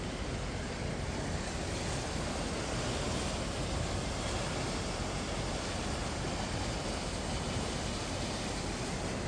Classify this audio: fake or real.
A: fake